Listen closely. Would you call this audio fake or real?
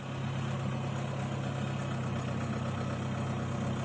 real